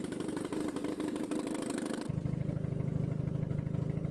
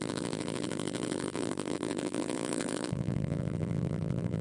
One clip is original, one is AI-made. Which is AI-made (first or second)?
second